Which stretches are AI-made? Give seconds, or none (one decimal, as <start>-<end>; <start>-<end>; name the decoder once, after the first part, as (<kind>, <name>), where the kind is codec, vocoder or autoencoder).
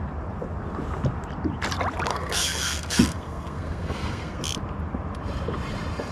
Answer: 2.1-4.4 (codec, SNAC)